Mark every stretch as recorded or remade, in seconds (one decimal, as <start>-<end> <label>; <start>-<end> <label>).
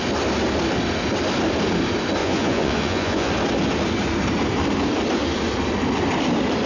0.0-2.2 recorded; 2.2-3.3 remade; 3.3-6.7 recorded